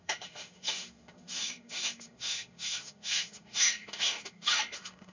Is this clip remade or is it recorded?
remade